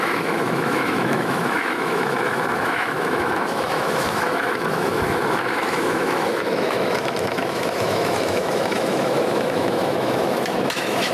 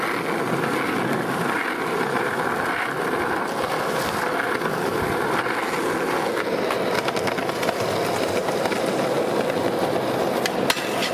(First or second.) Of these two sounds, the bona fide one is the second